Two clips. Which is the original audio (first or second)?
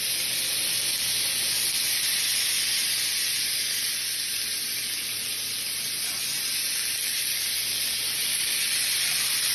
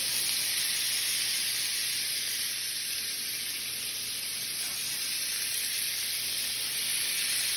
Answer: first